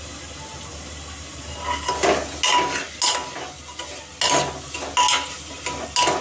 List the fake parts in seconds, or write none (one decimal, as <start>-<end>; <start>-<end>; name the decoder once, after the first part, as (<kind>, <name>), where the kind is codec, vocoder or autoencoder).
none